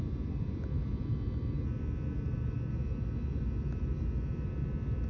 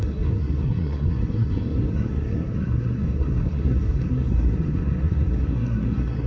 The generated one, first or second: second